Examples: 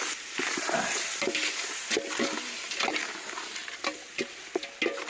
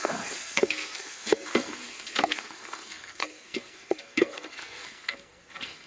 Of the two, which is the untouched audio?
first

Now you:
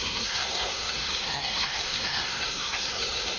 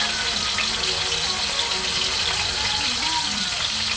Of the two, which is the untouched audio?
second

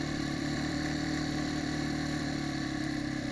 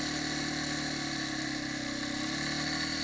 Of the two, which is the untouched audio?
second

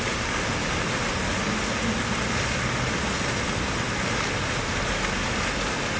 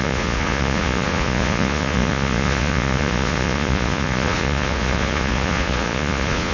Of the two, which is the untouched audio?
first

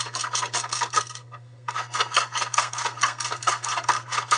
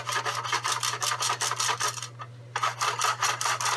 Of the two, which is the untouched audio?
second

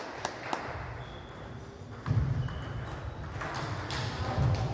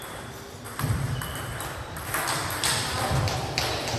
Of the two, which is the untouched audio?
first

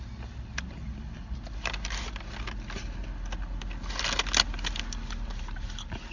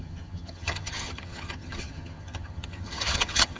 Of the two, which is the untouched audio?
first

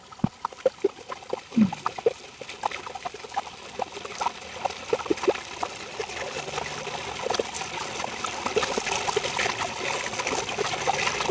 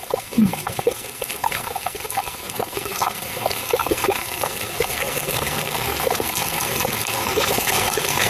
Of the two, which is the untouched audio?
first